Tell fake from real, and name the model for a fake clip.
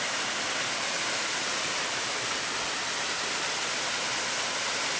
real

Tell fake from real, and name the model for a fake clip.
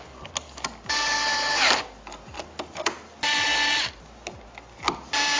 real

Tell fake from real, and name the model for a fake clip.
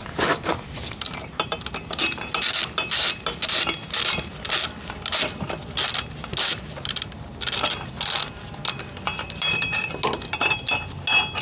real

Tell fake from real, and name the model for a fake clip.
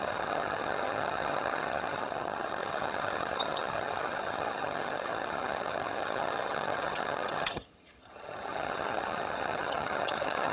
fake, vocoder, HiFi-GAN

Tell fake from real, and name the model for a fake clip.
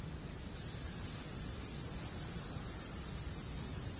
real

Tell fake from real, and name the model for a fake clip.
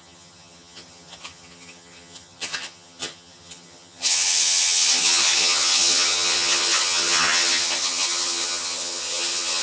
fake, vocoder, HiFi-GAN